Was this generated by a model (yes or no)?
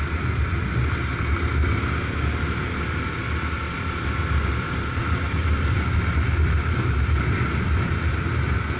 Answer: no